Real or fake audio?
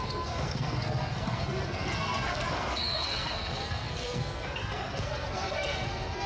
fake